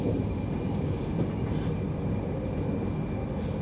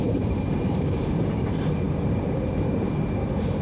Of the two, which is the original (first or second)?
first